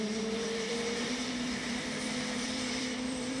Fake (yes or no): yes